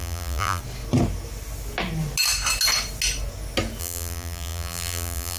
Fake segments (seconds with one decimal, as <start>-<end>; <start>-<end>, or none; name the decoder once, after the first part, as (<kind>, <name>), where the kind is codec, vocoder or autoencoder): 0.0-0.6 (vocoder, BigVGAN v2); 3.8-5.4